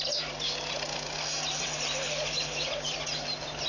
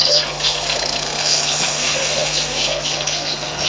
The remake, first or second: second